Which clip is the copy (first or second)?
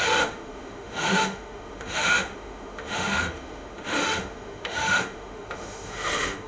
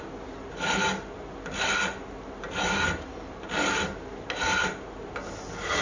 first